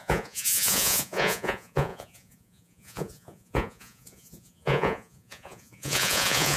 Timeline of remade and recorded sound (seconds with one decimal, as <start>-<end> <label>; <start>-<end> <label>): 0.0-6.6 remade